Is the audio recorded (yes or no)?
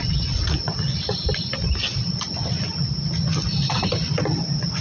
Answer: yes